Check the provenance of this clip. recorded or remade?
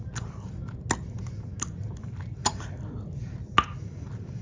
recorded